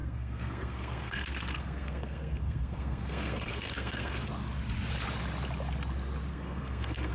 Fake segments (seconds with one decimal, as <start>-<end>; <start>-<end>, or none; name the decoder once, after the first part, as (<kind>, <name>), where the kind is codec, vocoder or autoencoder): 0.0-4.3 (codec, SNAC); 6.3-7.1